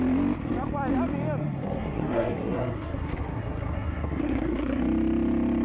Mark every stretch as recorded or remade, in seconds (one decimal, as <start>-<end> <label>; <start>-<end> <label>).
0.0-1.4 recorded; 1.4-4.8 remade; 4.8-5.6 recorded